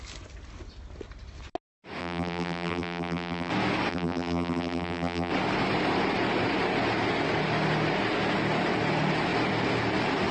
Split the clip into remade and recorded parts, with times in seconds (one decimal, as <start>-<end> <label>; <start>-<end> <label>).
0.0-2.0 recorded; 2.0-3.5 remade; 3.5-3.9 recorded; 3.9-5.3 remade; 5.3-10.3 recorded

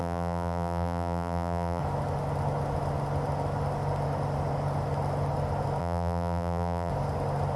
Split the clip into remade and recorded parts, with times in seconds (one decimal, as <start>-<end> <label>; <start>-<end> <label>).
0.0-1.8 remade; 1.8-5.8 recorded; 5.8-6.9 remade; 6.9-7.6 recorded

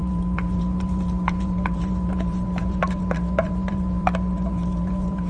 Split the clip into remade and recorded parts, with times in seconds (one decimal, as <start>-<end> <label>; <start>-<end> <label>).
0.0-5.3 remade

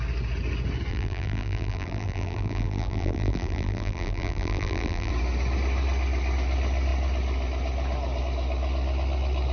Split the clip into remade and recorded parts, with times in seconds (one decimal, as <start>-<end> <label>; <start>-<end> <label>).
0.0-0.9 recorded; 0.9-5.1 remade; 5.1-9.5 recorded

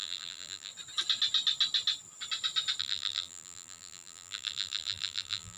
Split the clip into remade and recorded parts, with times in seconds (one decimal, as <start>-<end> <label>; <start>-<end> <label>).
0.0-0.7 remade; 0.7-2.8 recorded; 2.8-5.6 remade

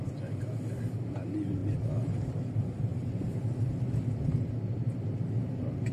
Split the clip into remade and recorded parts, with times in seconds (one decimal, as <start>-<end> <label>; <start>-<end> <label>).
0.0-1.6 recorded; 1.6-2.3 remade; 2.3-2.9 recorded; 2.9-3.4 remade; 3.4-5.9 recorded

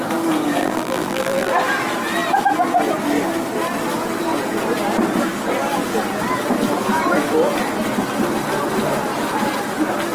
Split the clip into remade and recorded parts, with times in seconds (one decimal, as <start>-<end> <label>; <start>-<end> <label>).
0.0-0.6 recorded; 0.6-1.5 remade; 1.5-10.1 recorded